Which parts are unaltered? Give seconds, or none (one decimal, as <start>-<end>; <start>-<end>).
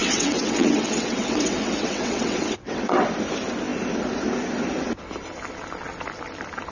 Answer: 3.1-6.7